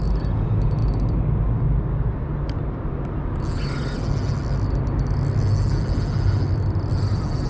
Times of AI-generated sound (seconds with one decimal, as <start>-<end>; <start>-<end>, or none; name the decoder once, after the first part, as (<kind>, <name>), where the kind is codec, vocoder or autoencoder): none